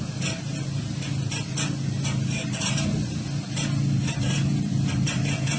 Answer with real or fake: real